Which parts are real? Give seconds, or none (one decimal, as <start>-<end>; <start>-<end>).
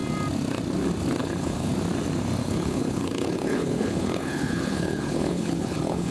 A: 0.0-1.2; 1.7-2.4